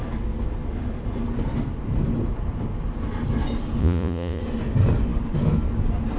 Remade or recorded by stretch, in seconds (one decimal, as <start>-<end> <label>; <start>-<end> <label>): 0.0-3.8 recorded; 3.8-4.4 remade; 4.4-6.2 recorded